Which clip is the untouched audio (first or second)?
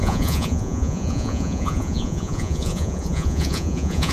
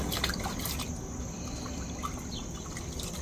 second